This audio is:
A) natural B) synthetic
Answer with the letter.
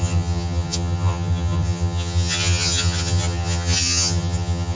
B